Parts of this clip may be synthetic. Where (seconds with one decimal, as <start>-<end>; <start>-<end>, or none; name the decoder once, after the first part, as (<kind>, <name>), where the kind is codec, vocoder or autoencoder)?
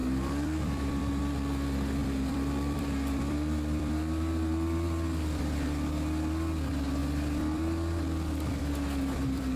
0.0-1.2 (vocoder, BigVGAN v2); 2.0-5.4; 7.0-9.6